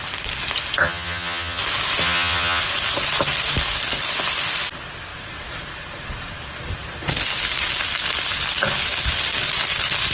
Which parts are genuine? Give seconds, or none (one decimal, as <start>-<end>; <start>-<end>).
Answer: 0.0-0.8; 1.6-2.0; 2.6-10.1